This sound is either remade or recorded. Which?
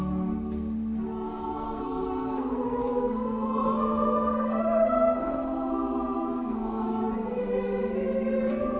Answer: remade